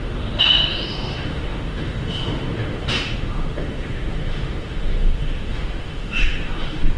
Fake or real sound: fake